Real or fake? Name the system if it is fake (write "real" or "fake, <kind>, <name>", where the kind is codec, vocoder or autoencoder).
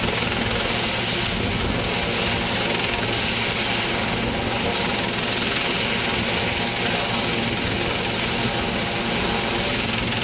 real